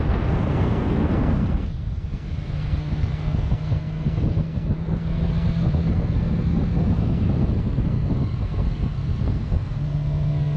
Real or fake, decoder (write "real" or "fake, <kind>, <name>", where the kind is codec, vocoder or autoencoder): fake, codec, SNAC